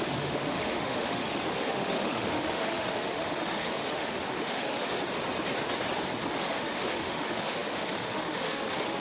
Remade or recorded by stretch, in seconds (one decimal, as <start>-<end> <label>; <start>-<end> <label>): 0.0-4.9 remade; 4.9-6.3 recorded; 6.3-9.0 remade